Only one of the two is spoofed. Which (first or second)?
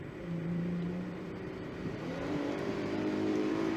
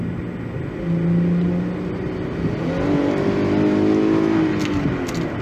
first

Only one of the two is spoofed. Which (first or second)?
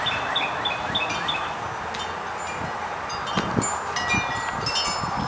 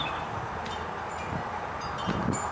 second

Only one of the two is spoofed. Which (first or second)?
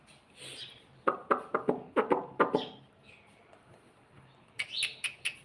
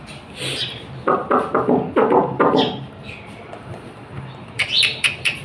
second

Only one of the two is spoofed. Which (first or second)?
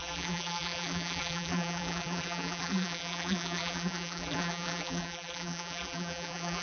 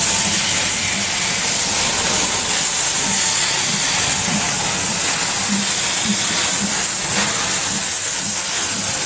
first